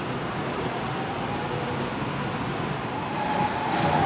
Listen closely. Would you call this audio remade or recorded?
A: recorded